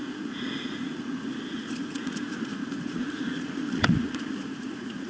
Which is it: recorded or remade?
remade